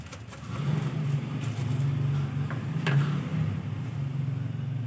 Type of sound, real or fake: real